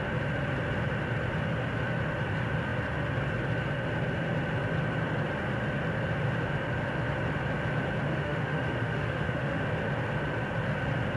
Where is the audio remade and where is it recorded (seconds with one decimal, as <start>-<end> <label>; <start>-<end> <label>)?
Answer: 0.0-8.1 recorded; 8.1-9.6 remade; 9.6-11.2 recorded